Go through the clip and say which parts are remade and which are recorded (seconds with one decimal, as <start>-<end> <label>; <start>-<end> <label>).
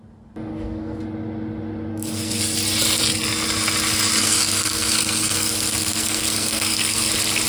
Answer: 0.0-0.5 recorded; 0.5-1.0 remade; 1.0-1.9 recorded; 1.9-2.4 remade; 2.4-4.2 recorded; 4.2-7.1 remade; 7.1-7.5 recorded